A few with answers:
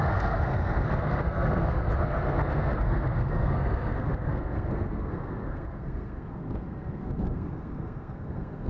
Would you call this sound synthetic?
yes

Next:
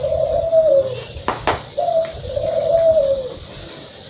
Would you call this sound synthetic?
no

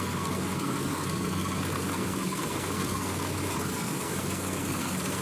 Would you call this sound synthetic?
yes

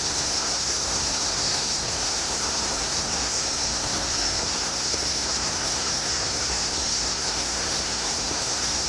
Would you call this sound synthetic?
yes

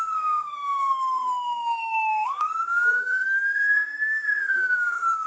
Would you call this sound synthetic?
yes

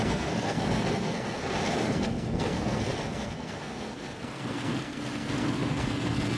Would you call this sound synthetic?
yes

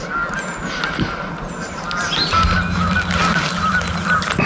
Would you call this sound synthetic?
no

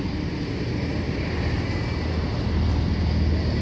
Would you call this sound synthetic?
no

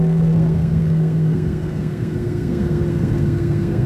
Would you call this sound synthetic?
yes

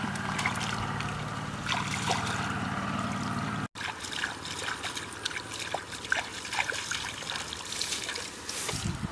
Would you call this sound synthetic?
no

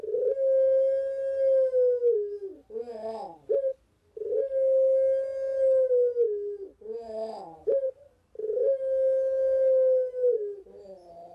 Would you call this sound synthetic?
no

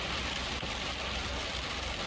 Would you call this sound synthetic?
no